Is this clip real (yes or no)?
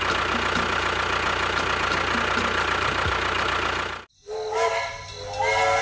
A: yes